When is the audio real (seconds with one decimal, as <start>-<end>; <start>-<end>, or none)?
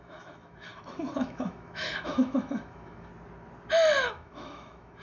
3.1-4.1